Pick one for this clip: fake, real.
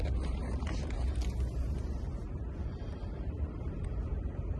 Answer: fake